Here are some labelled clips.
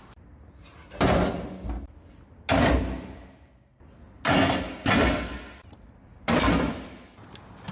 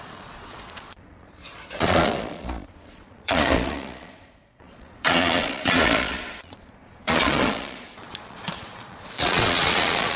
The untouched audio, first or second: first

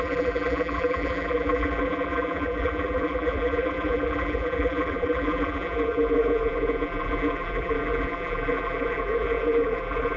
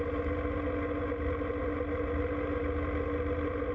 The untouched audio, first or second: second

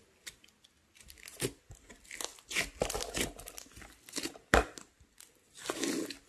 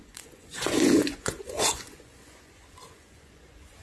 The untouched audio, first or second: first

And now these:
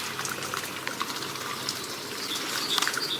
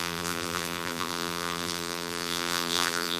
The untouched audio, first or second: first